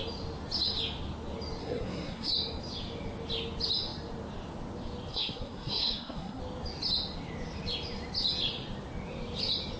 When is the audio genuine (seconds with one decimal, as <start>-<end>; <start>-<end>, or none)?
0.0-1.6; 2.3-5.1; 6.4-9.8